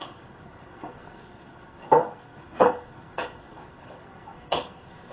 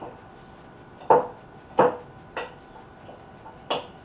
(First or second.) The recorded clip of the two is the second